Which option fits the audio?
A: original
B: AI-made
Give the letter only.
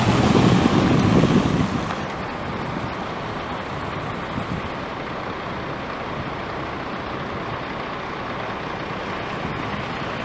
A